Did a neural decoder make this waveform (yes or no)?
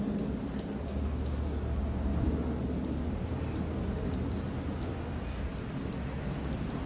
no